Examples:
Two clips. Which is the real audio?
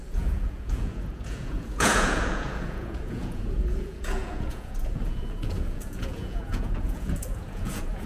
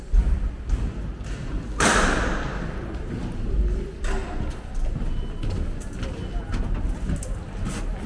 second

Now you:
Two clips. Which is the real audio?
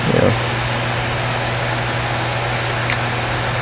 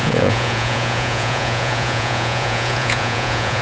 first